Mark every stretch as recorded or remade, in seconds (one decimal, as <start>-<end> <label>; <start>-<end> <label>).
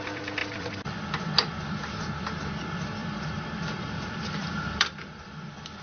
0.0-0.4 recorded; 0.4-1.0 remade; 1.0-3.0 recorded; 3.0-5.3 remade; 5.3-5.8 recorded